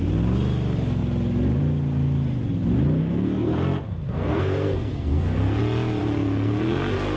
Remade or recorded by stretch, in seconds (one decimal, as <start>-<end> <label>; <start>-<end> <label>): 0.0-3.0 recorded; 3.0-5.6 remade; 5.6-6.0 recorded; 6.0-7.2 remade

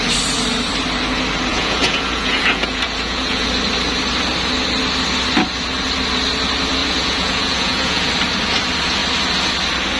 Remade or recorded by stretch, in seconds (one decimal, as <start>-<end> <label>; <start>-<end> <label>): 0.0-1.5 recorded; 1.5-3.5 remade; 3.5-6.8 recorded; 6.8-8.1 remade; 8.1-10.0 recorded

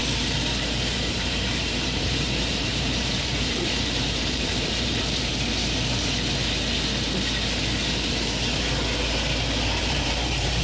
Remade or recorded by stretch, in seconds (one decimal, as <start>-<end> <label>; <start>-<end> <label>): 0.0-0.9 recorded; 0.9-5.3 remade; 5.3-9.8 recorded; 9.8-10.6 remade

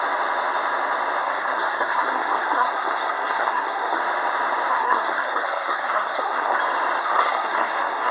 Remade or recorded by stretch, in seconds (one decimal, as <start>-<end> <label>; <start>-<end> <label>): 0.0-1.2 recorded; 1.2-4.0 remade; 4.0-4.7 recorded; 4.7-6.6 remade; 6.6-7.0 recorded; 7.0-8.1 remade

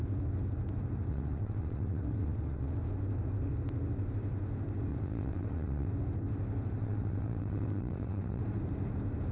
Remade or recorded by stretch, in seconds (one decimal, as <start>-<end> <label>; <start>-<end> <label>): 0.0-1.1 recorded; 1.1-2.7 remade; 2.7-4.9 recorded; 4.9-5.9 remade; 5.9-6.8 recorded; 6.8-8.4 remade; 8.4-9.3 recorded

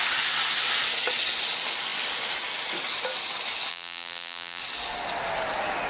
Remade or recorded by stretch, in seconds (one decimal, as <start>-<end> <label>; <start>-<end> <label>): 0.0-3.7 recorded; 3.7-4.6 remade; 4.6-5.9 recorded

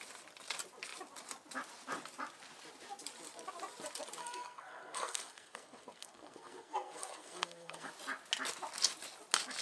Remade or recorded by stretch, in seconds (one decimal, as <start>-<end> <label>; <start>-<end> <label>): 0.0-4.2 recorded; 4.2-7.9 remade; 7.9-9.6 recorded

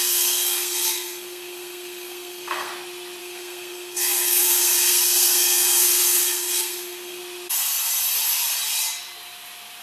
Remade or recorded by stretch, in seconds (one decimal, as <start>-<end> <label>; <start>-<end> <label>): 0.0-2.7 remade; 2.7-3.2 recorded; 3.2-7.2 remade; 7.2-9.8 recorded